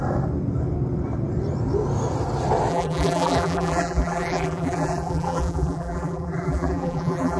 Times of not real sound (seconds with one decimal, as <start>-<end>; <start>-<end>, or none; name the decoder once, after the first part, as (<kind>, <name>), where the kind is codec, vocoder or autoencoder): 2.7-7.4 (vocoder, BigVGAN v2)